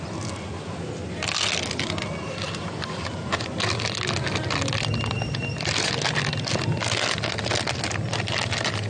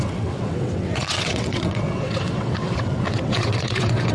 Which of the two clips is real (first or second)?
first